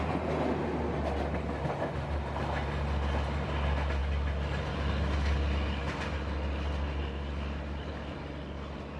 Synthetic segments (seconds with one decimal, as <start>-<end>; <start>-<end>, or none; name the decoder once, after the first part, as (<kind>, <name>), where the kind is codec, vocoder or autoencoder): none